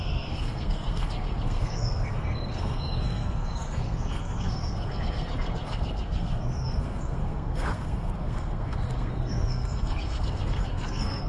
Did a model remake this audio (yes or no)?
yes